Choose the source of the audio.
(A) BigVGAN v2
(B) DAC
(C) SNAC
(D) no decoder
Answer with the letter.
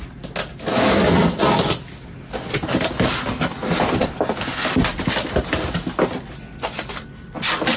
D